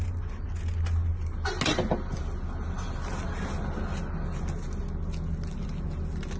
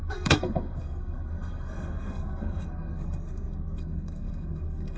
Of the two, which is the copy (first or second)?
second